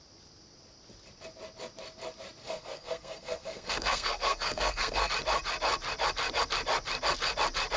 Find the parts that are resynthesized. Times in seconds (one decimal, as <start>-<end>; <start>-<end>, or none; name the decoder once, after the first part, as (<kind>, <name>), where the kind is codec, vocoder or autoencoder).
2.4-5.1 (codec, SNAC)